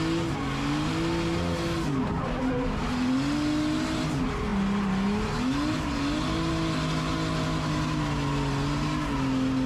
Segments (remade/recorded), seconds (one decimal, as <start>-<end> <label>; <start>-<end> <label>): 0.0-9.7 recorded